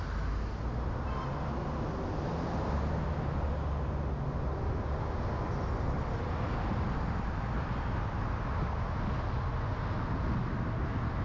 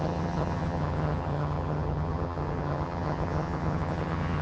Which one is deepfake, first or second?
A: second